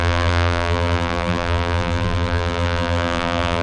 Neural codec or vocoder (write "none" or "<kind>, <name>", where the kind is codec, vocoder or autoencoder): vocoder, BigVGAN v2